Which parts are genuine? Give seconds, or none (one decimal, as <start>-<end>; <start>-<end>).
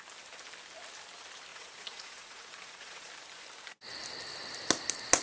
0.0-1.5; 3.1-5.2